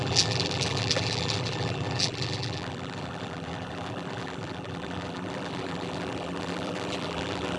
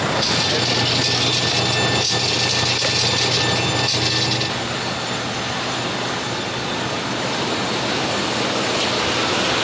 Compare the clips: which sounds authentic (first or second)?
second